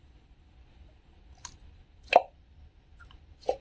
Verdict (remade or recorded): recorded